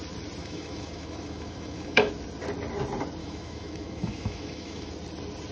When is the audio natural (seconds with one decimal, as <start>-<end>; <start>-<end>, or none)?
0.0-0.4; 2.1-3.2; 4.9-5.5